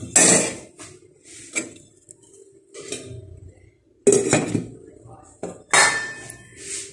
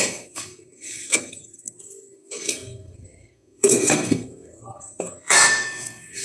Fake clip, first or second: second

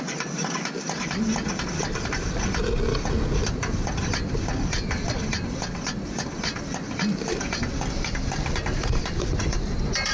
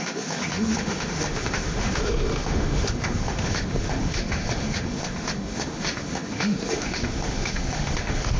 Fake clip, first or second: second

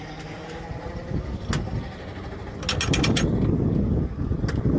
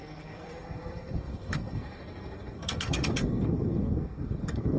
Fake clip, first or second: second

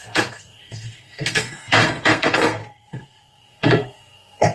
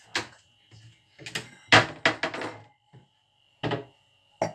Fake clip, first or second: first